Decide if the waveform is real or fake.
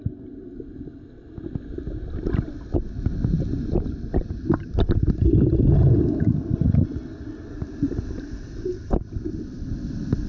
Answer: real